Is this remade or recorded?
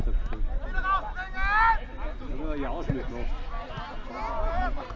recorded